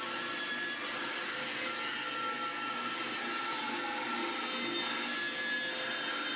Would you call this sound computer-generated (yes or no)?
no